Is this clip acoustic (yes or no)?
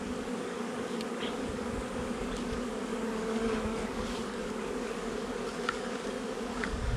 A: no